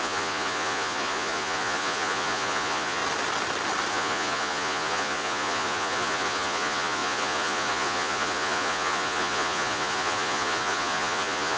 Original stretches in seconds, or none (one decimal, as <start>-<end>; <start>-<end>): 3.0-3.9